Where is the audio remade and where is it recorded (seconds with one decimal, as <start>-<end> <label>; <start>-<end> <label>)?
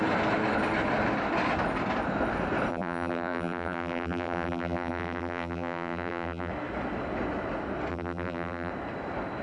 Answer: 0.0-2.7 recorded; 2.7-6.5 remade; 6.5-7.9 recorded; 7.9-8.7 remade; 8.7-9.4 recorded